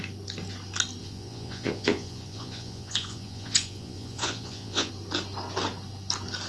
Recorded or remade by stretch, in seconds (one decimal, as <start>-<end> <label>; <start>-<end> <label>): 0.0-1.0 recorded; 1.0-4.9 remade; 4.9-6.5 recorded